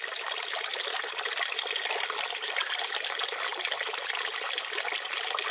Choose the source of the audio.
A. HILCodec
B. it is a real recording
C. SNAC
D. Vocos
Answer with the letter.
B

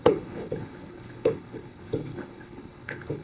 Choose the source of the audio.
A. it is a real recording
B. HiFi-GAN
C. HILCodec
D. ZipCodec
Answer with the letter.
C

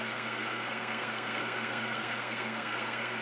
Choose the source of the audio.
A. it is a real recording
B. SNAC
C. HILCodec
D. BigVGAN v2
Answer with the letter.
B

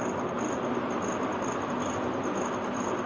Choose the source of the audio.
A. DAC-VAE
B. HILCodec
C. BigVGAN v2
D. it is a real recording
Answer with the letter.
D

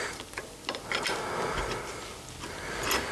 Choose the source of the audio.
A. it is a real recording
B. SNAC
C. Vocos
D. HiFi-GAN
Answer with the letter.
A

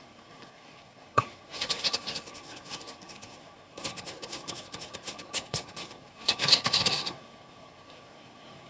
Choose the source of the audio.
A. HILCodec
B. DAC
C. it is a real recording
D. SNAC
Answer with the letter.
D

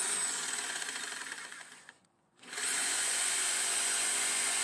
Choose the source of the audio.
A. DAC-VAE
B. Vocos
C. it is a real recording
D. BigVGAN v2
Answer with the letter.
B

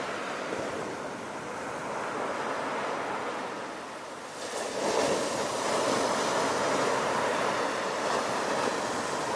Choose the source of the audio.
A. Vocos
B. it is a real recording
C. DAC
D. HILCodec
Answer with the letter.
B